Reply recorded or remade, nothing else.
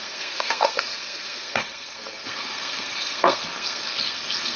remade